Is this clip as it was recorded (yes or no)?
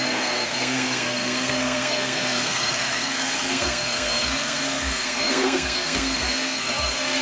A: no